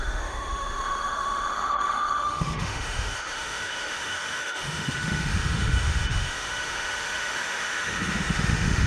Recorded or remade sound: remade